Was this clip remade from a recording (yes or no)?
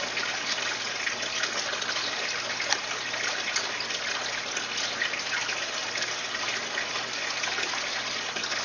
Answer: no